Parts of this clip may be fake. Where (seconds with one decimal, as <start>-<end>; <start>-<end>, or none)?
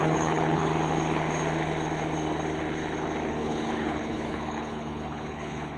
0.0-0.7; 3.3-5.8